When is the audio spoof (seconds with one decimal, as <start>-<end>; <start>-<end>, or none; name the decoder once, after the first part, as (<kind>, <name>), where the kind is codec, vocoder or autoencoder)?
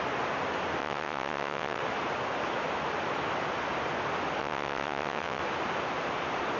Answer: 0.8-1.8 (vocoder, WaveNeXt); 4.4-5.4